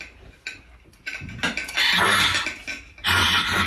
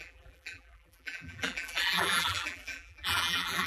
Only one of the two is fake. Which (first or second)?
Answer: second